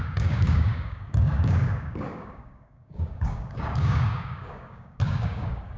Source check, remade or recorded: remade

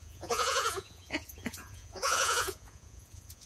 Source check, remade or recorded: remade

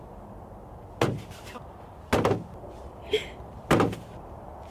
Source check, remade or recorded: recorded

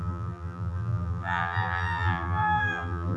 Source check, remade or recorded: remade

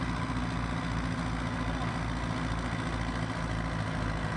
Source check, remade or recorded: recorded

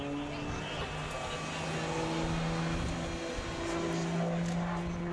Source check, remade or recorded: recorded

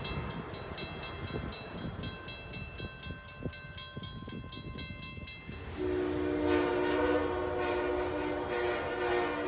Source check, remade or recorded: recorded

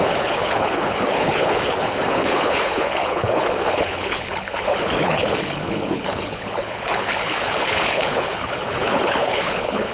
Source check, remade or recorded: remade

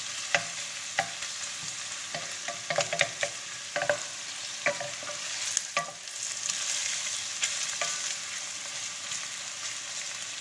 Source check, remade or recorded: recorded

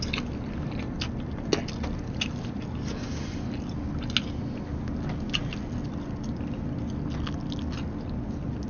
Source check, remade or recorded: recorded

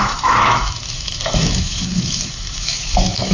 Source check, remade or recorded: remade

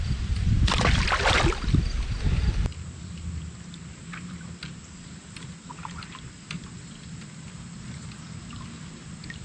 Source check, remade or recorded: remade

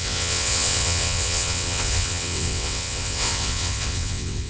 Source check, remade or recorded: remade